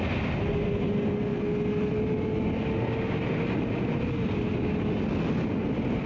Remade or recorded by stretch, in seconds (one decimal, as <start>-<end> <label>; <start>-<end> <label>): 0.0-6.1 recorded